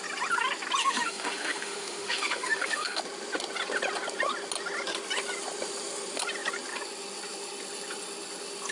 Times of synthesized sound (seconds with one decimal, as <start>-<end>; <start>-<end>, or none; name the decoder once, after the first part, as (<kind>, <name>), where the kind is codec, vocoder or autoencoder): 0.8-3.0 (autoencoder, DAC-VAE)